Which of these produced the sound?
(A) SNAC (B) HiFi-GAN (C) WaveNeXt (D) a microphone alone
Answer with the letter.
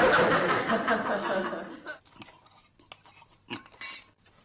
D